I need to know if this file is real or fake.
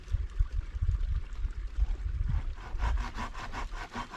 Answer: real